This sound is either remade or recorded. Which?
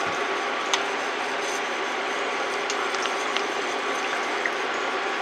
recorded